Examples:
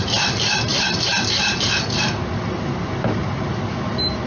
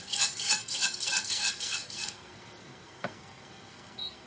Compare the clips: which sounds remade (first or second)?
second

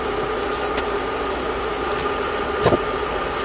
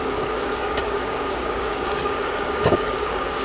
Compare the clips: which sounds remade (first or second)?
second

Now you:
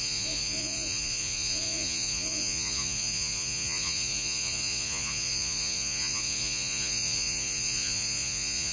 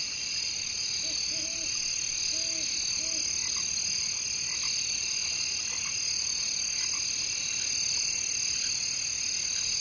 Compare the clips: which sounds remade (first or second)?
first